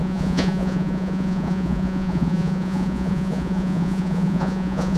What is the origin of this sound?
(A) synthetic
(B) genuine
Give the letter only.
A